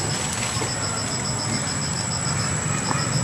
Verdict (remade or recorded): recorded